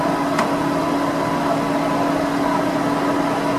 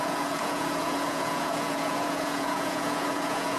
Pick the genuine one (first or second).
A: first